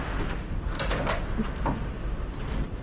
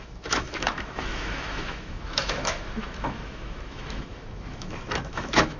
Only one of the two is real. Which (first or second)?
first